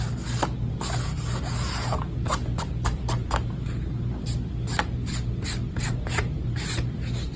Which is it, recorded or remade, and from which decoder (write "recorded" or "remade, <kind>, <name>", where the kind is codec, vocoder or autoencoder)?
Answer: recorded